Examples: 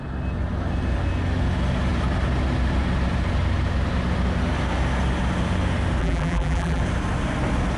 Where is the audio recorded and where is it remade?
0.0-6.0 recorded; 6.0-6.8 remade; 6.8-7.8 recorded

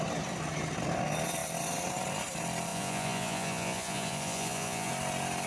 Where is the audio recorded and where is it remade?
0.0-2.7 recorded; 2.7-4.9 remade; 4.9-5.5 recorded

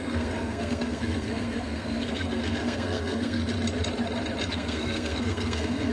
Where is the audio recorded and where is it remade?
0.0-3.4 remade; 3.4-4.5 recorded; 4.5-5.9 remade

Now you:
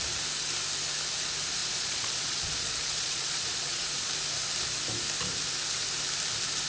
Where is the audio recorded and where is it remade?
0.0-1.6 recorded; 1.6-4.1 remade; 4.1-6.7 recorded

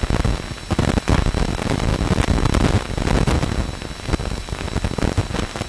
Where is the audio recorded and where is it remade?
0.0-5.7 recorded

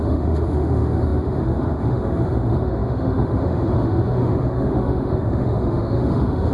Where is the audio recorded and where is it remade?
0.0-6.5 remade

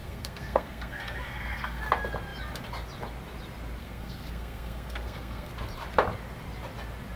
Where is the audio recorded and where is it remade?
0.0-1.8 remade; 1.8-3.8 recorded; 3.8-5.5 remade; 5.5-7.2 recorded

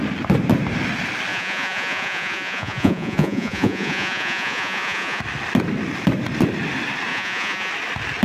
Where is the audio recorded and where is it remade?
0.0-1.3 recorded; 1.3-5.2 remade; 5.2-7.1 recorded; 7.1-7.7 remade; 7.7-8.2 recorded